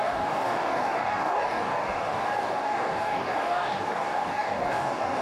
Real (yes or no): no